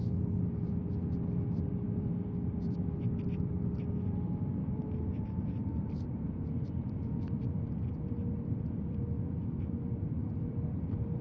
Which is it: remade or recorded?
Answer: remade